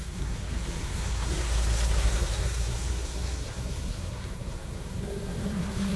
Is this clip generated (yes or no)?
yes